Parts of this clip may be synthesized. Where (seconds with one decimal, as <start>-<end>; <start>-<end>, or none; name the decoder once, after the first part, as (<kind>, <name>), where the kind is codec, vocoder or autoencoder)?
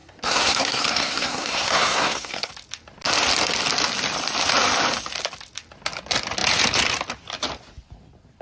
0.0-2.5 (codec, SNAC)